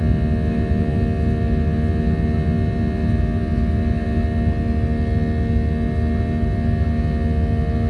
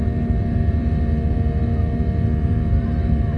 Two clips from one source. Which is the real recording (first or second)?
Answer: first